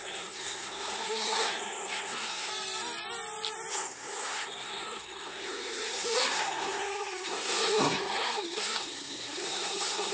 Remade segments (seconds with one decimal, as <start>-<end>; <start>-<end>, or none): 0.0-2.5; 3.7-10.1